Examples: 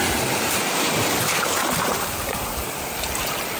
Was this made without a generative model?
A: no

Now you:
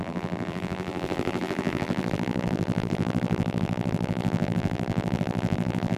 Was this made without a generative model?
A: no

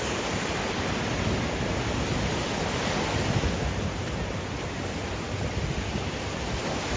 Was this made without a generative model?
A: yes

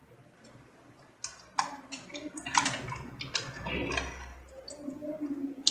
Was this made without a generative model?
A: no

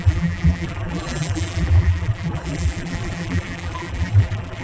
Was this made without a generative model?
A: no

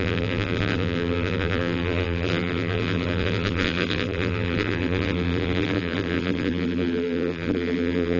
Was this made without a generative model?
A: no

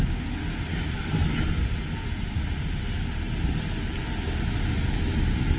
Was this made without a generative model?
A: yes